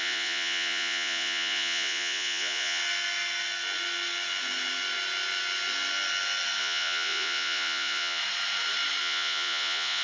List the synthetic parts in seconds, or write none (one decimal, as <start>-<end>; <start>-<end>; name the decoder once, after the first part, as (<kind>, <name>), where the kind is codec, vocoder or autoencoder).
0.0-2.8 (vocoder, Vocos); 6.6-8.2; 9.0-10.0